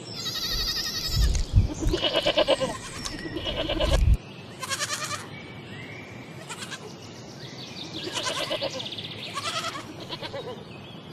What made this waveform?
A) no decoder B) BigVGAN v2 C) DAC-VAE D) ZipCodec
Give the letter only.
B